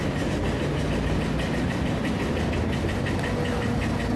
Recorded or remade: recorded